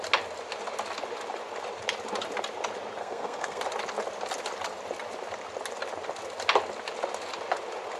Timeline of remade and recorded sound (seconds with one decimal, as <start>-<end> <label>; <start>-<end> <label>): 0.0-3.0 recorded; 3.0-3.6 remade; 3.6-8.0 recorded